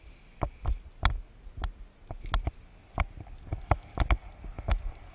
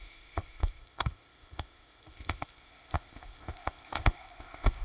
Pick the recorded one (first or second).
first